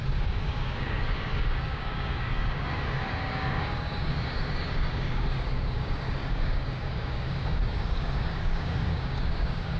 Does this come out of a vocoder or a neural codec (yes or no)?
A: yes